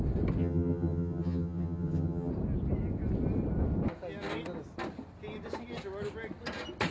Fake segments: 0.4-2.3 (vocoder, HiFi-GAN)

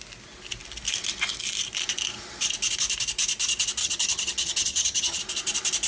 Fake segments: 3.8-5.2 (vocoder, HiFi-GAN)